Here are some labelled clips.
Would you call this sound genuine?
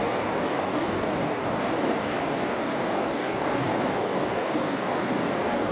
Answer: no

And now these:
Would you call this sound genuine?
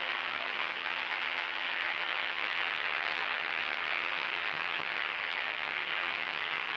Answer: no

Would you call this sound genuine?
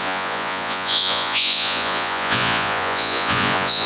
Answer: no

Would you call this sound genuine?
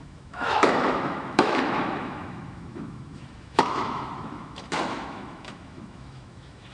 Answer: no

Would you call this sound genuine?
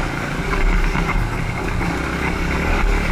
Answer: no